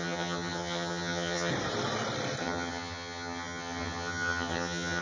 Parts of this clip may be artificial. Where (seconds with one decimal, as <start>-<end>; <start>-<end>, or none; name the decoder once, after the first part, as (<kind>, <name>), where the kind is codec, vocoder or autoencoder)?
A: 0.0-1.5 (vocoder, HiFi-GAN); 2.4-5.0